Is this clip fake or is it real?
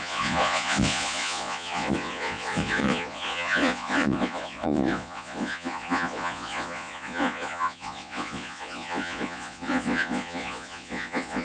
fake